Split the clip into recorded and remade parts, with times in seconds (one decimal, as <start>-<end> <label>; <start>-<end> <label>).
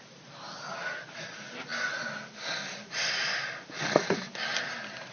0.0-5.1 recorded